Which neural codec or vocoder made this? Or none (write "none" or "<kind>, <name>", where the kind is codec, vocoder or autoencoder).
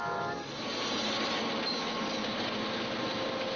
none